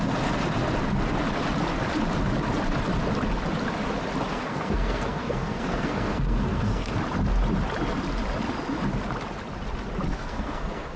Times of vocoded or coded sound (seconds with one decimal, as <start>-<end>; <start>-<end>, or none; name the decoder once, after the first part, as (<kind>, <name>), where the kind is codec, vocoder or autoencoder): 4.3-6.9 (codec, SNAC); 10.1-11.0